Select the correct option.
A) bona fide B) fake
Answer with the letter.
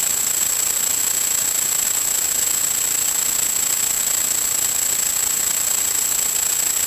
A